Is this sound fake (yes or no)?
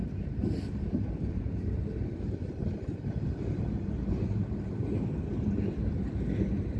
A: no